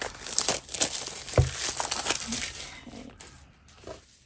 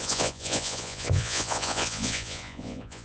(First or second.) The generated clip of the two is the second